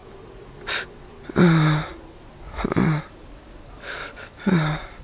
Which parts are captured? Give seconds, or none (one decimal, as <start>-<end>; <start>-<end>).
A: 0.0-3.0